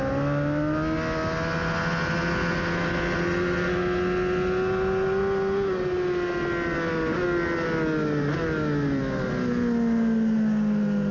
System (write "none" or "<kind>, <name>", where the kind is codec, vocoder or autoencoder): none